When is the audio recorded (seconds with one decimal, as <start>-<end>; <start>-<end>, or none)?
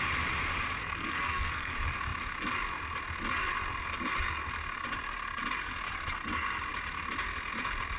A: 0.0-0.8; 1.7-8.0